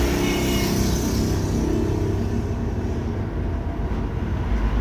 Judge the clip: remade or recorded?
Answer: recorded